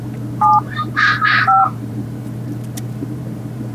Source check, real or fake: fake